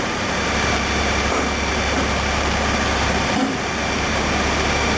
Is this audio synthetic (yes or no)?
yes